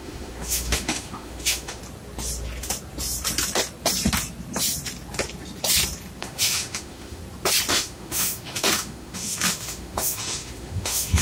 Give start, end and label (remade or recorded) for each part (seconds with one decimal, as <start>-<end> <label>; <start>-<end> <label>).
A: 0.0-1.8 remade; 1.8-6.2 recorded; 6.2-7.2 remade; 7.2-7.7 recorded; 7.7-11.2 remade